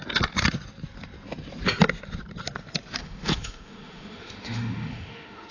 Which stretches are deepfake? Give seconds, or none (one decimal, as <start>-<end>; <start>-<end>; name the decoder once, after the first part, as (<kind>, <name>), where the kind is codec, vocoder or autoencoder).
3.0-5.5 (autoencoder, DAC-VAE)